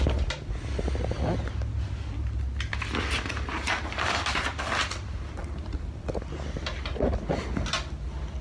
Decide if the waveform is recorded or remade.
recorded